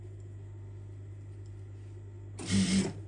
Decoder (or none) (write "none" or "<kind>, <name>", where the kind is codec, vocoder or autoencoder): none